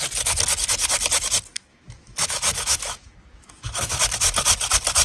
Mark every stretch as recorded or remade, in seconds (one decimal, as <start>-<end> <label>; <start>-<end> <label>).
0.0-1.7 recorded; 1.7-4.0 remade; 4.0-5.0 recorded